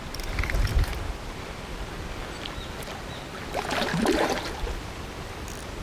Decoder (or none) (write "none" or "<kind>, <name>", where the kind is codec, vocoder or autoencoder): vocoder, BigVGAN v2